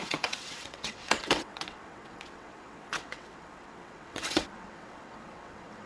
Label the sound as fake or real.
fake